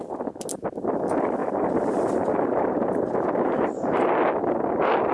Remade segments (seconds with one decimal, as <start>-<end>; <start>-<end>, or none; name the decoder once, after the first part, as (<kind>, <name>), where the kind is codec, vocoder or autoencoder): 1.4-4.1 (vocoder, BigVGAN v2)